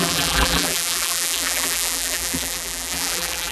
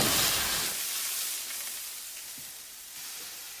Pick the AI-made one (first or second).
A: first